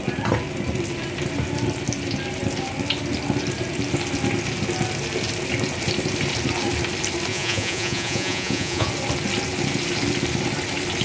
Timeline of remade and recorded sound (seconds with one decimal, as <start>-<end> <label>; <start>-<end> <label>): 0.0-7.3 recorded; 7.3-8.9 remade; 8.9-11.0 recorded